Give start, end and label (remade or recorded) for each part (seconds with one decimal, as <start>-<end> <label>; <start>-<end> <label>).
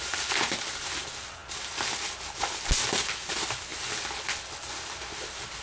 0.0-5.6 recorded